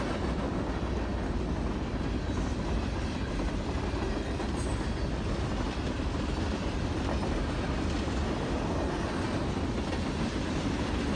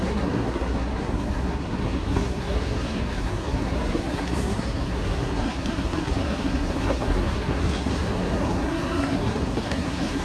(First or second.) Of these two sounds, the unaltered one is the first